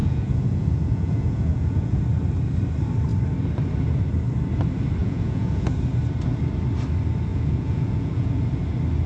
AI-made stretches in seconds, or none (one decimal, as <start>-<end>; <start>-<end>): 0.0-2.0; 5.0-5.7; 7.3-8.4